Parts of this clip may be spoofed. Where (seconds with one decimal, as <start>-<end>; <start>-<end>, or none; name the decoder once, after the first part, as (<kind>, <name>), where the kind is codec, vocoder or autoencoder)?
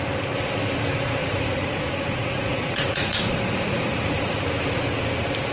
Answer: 1.2-4.5 (vocoder, Vocos)